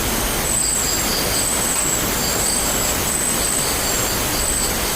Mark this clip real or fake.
real